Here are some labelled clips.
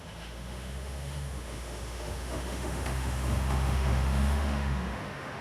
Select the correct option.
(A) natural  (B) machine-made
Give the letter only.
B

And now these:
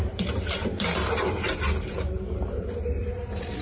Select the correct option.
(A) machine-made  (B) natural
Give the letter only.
A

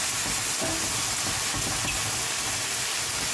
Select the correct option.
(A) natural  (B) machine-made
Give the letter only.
A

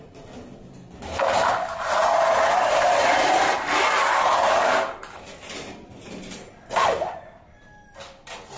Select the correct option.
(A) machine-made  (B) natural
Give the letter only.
B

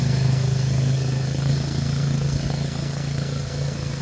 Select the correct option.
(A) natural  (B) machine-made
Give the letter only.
B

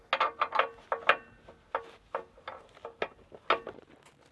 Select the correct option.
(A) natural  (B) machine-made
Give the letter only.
A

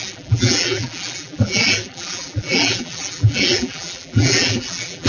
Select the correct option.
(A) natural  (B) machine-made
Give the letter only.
B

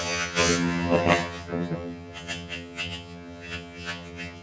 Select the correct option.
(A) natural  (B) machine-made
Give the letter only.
B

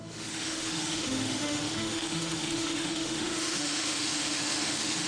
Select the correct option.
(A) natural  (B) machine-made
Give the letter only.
B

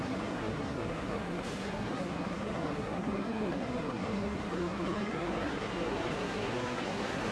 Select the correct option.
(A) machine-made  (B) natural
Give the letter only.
A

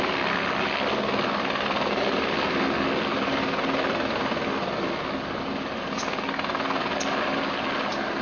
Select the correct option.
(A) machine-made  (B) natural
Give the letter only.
B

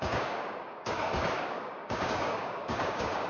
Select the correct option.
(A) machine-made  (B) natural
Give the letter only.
A